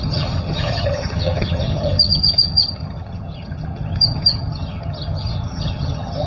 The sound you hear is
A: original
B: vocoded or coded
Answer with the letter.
B